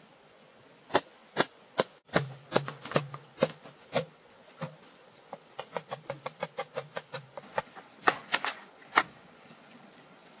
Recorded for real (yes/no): no